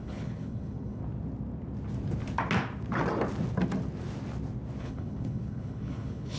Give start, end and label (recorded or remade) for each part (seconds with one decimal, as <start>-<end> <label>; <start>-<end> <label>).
0.0-1.0 remade; 1.0-4.8 recorded; 4.8-6.4 remade